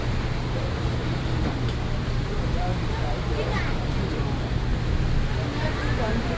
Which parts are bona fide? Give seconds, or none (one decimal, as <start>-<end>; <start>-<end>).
0.0-1.0; 1.5-2.7; 4.1-6.4